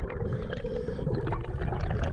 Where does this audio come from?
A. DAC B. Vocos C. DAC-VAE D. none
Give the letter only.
D